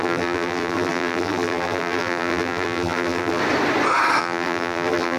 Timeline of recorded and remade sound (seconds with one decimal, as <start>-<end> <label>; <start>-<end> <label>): 0.0-3.4 remade; 3.4-4.2 recorded; 4.2-5.2 remade